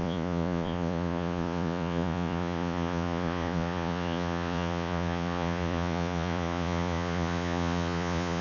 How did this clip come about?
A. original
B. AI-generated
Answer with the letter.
B